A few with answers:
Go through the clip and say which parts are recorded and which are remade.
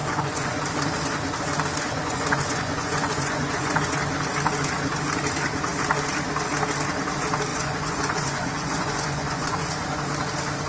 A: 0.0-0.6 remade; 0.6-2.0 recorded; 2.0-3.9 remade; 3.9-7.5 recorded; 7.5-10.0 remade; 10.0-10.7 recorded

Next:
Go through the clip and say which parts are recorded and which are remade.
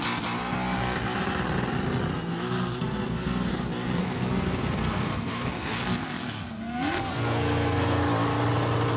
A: 0.0-2.1 recorded; 2.1-3.5 remade; 3.5-4.0 recorded; 4.0-8.0 remade; 8.0-9.0 recorded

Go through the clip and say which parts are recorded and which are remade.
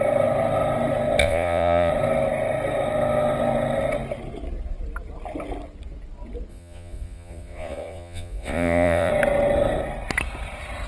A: 0.0-1.2 recorded; 1.2-1.9 remade; 1.9-6.5 recorded; 6.5-9.1 remade; 9.1-10.9 recorded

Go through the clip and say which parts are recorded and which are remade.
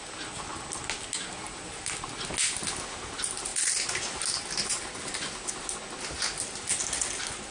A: 0.0-7.5 recorded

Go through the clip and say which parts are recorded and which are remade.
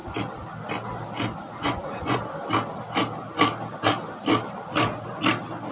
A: 0.0-1.6 recorded; 1.6-2.2 remade; 2.2-5.7 recorded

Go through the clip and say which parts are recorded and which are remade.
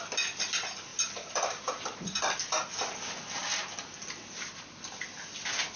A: 0.0-0.9 recorded; 0.9-2.7 remade; 2.7-5.8 recorded